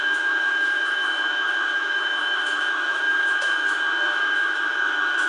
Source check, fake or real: fake